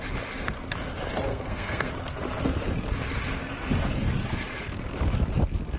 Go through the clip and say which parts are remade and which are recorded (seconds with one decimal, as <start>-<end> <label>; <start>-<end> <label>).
0.0-1.3 recorded; 1.3-1.9 remade; 1.9-5.8 recorded